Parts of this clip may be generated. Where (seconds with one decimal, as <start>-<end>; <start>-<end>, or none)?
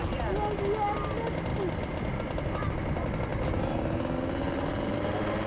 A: none